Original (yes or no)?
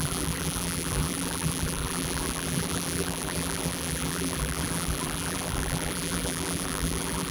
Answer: no